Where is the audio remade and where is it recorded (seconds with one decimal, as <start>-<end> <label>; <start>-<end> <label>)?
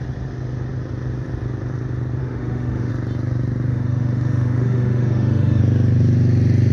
0.0-2.2 recorded; 2.2-2.9 remade; 2.9-3.7 recorded; 3.7-5.6 remade; 5.6-6.7 recorded